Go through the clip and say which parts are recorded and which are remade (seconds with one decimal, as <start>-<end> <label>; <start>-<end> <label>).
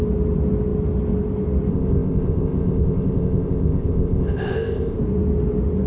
0.0-1.7 recorded; 1.7-5.0 remade; 5.0-5.9 recorded